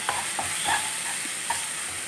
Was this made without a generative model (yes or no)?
yes